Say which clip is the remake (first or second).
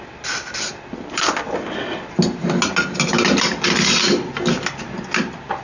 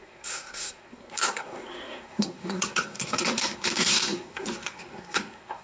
second